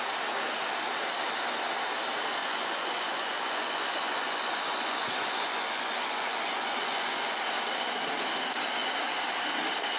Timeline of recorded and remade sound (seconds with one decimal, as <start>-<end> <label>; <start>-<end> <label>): 0.0-2.4 recorded; 2.4-7.4 remade; 7.4-10.0 recorded